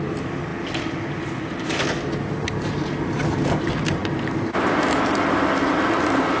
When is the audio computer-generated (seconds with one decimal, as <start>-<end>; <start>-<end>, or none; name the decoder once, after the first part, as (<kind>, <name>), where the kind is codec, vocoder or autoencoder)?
none